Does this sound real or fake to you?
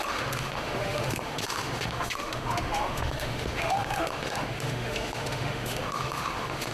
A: fake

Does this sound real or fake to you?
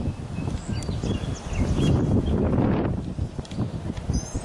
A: real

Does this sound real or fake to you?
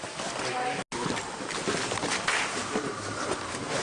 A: real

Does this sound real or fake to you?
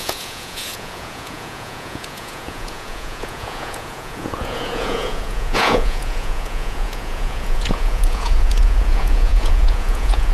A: fake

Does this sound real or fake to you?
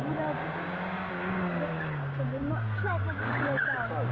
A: real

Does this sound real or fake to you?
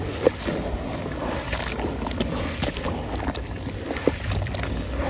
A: real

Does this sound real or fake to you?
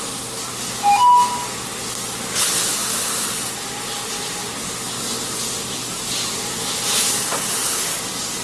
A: real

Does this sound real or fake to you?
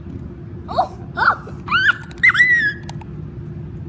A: real